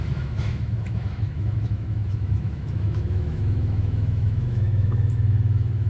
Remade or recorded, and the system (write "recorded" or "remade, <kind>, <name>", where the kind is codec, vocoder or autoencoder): remade, autoencoder, DAC-VAE